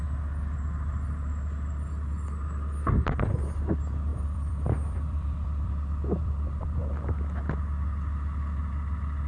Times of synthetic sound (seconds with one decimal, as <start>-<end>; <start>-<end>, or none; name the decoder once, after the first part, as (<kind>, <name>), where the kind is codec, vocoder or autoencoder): 4.1-5.7 (vocoder, BigVGAN v2); 6.2-6.8